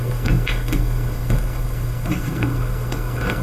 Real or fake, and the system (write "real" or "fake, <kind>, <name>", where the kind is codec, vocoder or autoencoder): fake, codec, SNAC